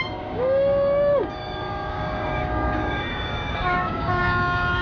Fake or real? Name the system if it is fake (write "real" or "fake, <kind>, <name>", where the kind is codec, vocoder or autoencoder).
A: fake, codec, DAC